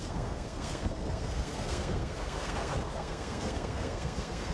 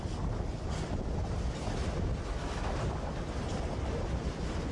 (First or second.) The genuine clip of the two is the second